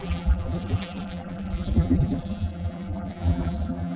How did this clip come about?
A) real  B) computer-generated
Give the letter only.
B